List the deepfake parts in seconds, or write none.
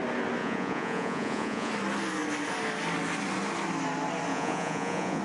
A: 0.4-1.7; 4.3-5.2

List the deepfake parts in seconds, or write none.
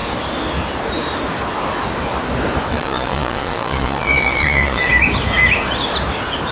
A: 2.7-4.9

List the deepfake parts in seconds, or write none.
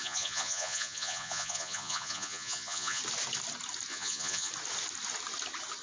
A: 0.0-3.0; 3.9-4.5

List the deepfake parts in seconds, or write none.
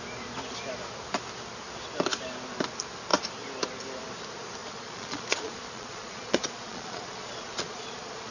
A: 4.6-8.3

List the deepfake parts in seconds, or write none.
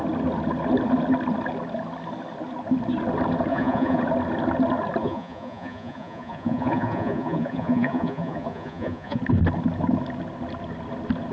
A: 3.5-4.0; 5.0-9.2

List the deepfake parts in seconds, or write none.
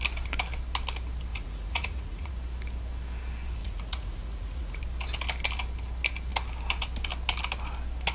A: 1.3-2.3; 3.6-4.8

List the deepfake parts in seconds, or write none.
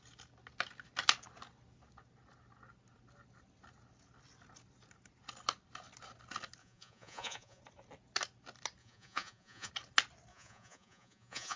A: 6.6-7.6; 8.8-9.7; 10.3-11.6